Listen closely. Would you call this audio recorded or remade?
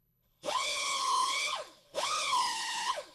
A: remade